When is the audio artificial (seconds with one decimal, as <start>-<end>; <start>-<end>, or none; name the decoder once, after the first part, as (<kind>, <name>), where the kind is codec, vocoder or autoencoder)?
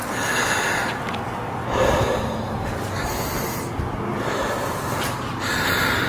1.6-3.1 (vocoder, BigVGAN v2); 4.1-6.1